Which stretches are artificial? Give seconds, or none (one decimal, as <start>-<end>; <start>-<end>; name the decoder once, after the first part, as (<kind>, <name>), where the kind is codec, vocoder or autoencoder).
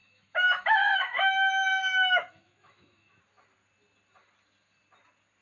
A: 0.0-3.2 (autoencoder, DAC-VAE)